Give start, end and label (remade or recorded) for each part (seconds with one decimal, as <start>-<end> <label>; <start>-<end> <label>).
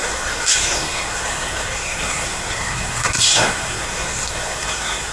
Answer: 0.0-5.1 remade